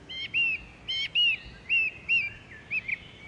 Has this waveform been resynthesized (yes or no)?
no